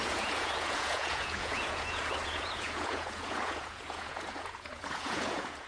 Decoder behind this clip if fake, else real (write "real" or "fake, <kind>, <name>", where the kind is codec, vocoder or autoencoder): fake, vocoder, Vocos